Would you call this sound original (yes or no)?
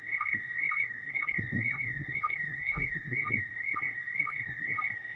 no